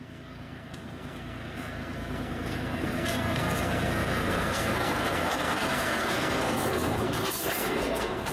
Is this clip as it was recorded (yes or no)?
no